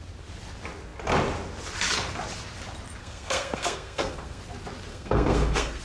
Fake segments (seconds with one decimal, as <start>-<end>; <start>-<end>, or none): 3.0-4.4; 4.9-5.8